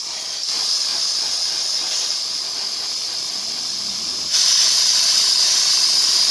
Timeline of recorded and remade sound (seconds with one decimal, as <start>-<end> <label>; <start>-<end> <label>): 0.0-6.3 recorded